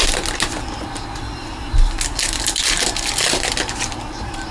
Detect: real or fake real